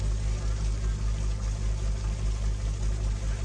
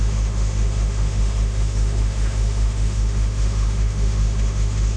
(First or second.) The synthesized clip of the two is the second